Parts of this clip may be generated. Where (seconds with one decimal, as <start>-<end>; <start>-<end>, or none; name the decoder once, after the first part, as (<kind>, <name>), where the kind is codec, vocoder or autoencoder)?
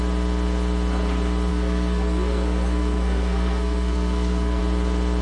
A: 1.5-4.6 (codec, SNAC)